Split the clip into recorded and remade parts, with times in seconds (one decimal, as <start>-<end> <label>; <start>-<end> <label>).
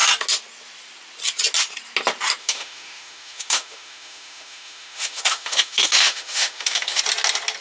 0.0-2.4 recorded; 2.4-7.0 remade; 7.0-7.6 recorded